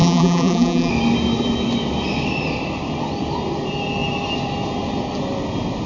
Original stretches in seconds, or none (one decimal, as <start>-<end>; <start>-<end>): 0.9-5.9

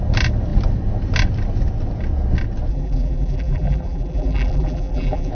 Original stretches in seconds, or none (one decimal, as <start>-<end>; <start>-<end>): 0.0-2.7

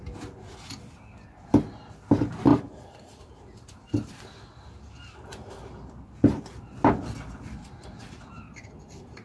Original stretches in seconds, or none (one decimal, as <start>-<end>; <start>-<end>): 0.0-2.5; 3.2-9.2

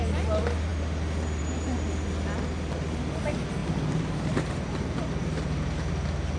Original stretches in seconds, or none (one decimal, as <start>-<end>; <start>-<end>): 0.0-3.6; 5.9-6.4